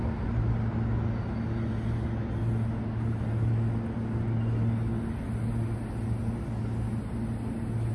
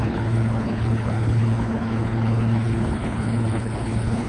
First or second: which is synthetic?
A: second